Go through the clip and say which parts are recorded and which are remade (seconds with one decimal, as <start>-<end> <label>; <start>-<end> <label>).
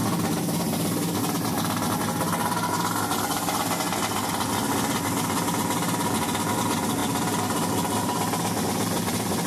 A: 0.0-9.5 recorded